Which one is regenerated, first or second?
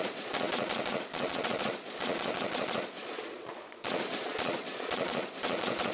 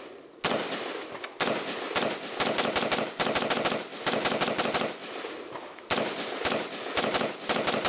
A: first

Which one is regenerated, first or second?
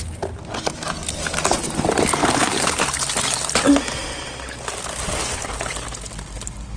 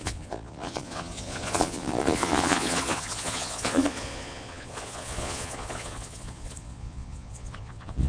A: second